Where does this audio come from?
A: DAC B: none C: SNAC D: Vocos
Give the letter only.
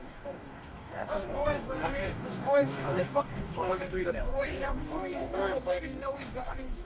A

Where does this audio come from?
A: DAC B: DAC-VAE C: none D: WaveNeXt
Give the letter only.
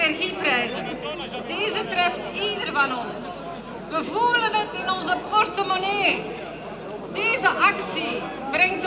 C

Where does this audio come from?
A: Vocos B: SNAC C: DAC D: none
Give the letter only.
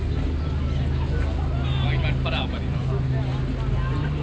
D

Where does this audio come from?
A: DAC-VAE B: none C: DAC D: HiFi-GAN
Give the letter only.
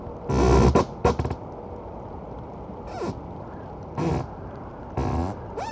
B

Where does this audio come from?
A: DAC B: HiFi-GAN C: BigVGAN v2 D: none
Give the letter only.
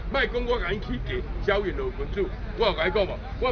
D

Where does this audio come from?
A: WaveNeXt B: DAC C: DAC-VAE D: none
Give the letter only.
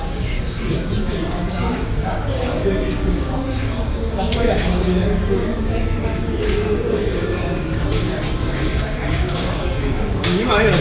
B